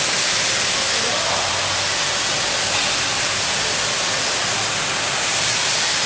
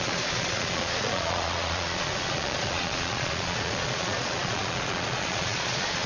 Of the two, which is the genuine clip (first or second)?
first